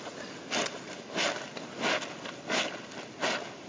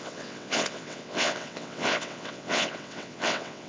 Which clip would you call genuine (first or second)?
first